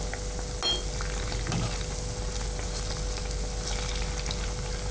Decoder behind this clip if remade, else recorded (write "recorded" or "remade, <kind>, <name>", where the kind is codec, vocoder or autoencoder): recorded